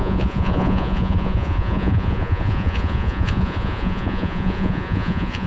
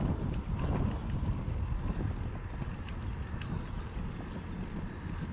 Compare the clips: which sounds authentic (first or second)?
second